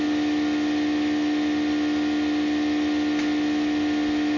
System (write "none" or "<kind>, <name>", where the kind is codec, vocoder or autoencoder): none